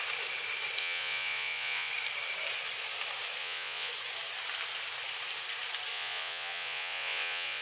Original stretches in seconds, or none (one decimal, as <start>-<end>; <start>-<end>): 0.0-0.8; 1.9-3.4; 3.9-5.9